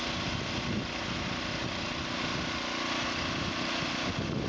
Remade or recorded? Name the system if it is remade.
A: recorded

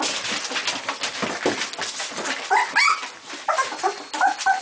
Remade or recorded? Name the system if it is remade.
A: recorded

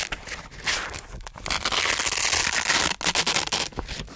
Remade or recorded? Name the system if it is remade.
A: recorded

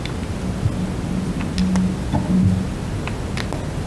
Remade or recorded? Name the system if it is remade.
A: recorded